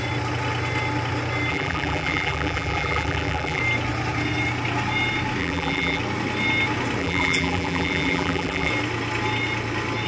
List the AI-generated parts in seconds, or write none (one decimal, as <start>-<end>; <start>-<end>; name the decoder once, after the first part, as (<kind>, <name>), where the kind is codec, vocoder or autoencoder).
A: 1.5-3.6 (vocoder, BigVGAN v2); 5.4-6.0; 7.0-8.7